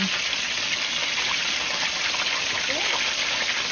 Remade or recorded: recorded